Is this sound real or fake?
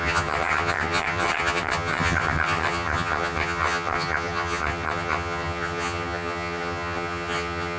fake